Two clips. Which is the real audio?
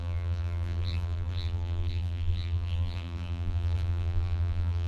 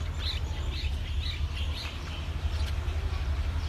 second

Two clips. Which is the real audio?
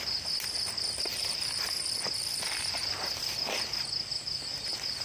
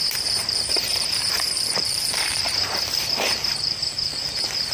first